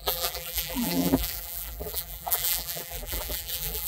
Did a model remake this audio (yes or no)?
yes